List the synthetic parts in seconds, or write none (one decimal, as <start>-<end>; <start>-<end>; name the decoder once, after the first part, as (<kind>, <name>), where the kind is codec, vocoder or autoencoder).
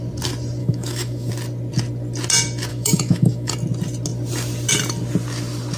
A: 0.6-1.3 (autoencoder, DAC-VAE); 2.7-3.5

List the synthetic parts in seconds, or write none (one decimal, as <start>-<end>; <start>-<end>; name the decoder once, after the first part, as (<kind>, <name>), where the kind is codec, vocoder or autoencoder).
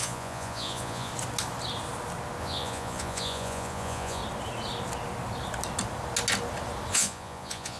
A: 0.0-1.1 (vocoder, Vocos); 2.4-4.2; 6.9-7.8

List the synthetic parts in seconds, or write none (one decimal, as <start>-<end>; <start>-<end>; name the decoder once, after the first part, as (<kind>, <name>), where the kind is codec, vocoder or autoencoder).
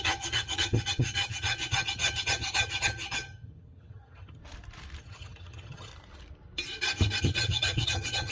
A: 0.0-4.4 (vocoder, HiFi-GAN); 5.0-5.9; 7.2-8.3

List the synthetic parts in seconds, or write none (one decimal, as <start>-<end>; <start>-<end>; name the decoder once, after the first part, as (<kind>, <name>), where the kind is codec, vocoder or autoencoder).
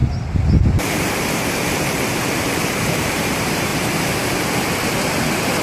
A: 1.5-3.7 (vocoder, BigVGAN v2)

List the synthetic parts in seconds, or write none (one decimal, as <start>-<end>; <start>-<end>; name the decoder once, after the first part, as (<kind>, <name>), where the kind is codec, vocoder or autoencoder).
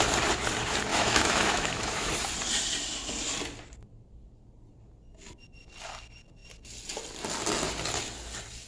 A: 0.9-2.1 (autoencoder, DAC-VAE)